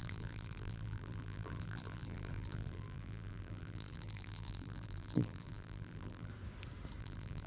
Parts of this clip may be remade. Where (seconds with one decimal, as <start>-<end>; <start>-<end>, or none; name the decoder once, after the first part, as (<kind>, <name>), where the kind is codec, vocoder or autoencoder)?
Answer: 0.0-6.3 (vocoder, BigVGAN v2); 7.0-7.5